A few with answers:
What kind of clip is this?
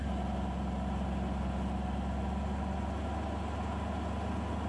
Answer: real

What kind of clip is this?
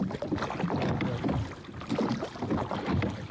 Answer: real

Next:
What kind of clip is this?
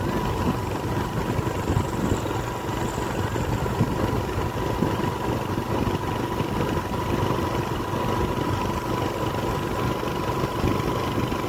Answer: real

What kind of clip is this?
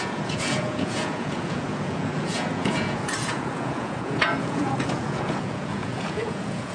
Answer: fake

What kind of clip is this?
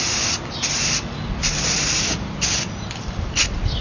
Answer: real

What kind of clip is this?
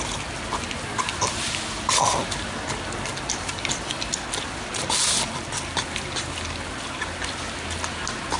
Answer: real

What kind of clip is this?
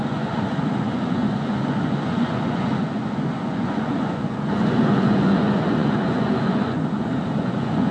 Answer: fake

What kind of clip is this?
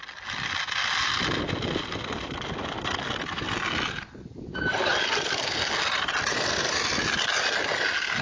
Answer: real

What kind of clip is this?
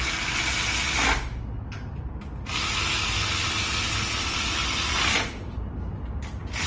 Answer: real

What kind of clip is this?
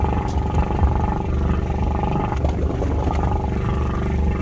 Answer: real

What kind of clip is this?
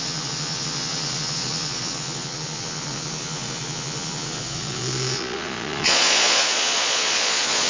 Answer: fake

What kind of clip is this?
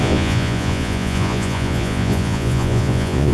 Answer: fake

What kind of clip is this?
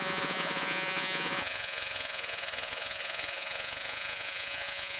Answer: fake